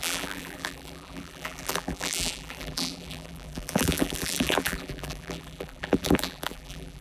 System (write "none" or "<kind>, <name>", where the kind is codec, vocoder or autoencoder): vocoder, BigVGAN v2